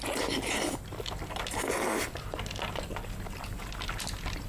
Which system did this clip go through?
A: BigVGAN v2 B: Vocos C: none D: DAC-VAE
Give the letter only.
C